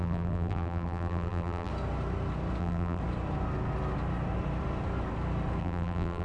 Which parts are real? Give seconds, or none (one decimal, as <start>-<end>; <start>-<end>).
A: 1.7-2.6; 3.0-5.6